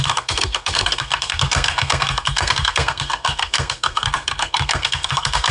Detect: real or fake fake